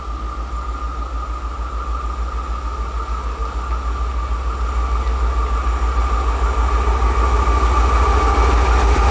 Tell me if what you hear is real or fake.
real